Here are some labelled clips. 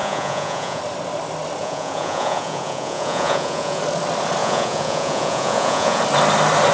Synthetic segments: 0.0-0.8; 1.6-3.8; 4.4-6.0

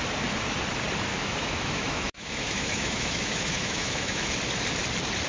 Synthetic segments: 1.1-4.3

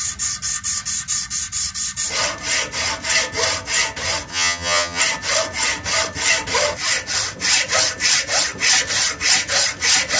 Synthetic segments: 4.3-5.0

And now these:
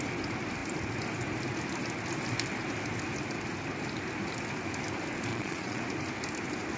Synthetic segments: 5.3-5.8

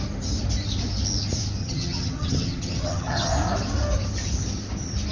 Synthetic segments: 1.6-3.3

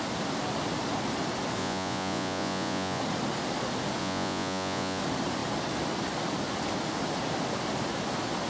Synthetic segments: 1.6-3.0; 4.0-5.0